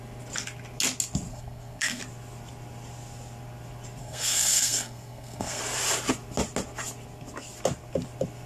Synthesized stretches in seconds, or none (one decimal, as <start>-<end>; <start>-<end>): 1.3-2.0; 4.0-5.6